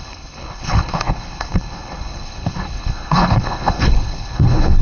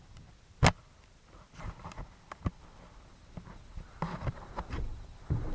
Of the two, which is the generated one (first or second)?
first